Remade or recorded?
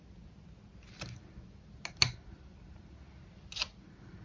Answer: recorded